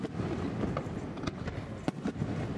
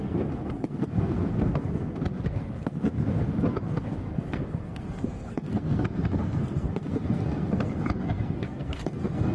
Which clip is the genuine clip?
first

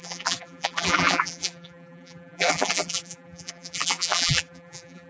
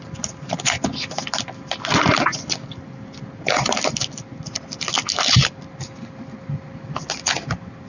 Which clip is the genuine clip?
second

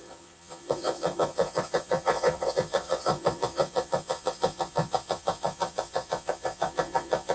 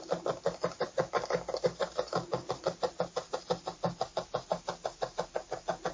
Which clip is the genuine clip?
second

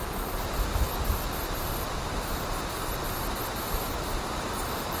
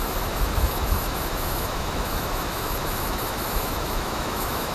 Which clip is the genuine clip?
first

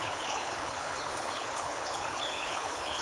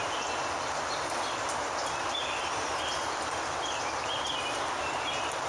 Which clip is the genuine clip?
second